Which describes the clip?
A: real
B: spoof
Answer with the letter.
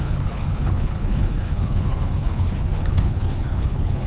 B